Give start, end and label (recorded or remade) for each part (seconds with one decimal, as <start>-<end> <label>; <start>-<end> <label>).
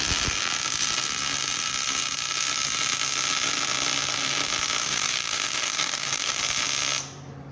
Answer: 0.0-4.8 recorded; 4.8-6.4 remade; 6.4-7.5 recorded